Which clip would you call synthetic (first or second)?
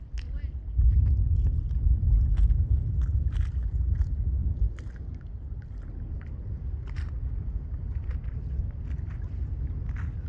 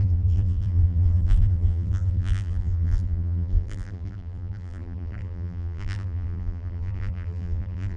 second